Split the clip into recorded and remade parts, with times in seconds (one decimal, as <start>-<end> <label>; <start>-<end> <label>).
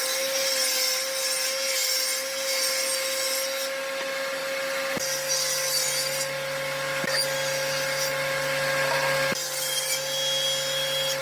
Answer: 0.0-11.2 recorded